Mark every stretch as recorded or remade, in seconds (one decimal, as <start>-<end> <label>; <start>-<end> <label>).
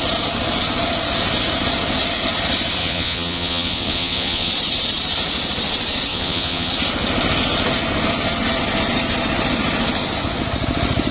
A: 0.0-2.8 recorded; 2.8-4.5 remade; 4.5-6.1 recorded; 6.1-6.7 remade; 6.7-11.1 recorded